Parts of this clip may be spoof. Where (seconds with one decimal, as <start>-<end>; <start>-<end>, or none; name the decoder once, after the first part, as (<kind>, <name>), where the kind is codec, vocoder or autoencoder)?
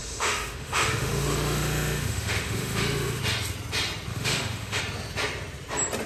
0.0-3.2 (autoencoder, DAC-VAE); 4.1-4.8